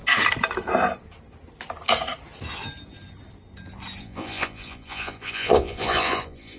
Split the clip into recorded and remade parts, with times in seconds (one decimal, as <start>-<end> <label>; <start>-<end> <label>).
0.0-4.0 recorded; 4.0-6.6 remade